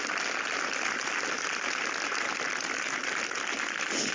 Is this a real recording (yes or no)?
yes